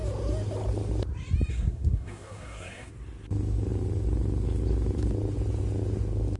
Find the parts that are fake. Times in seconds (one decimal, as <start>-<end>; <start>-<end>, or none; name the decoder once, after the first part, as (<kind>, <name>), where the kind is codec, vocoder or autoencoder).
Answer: 1.5-2.9 (codec, SNAC)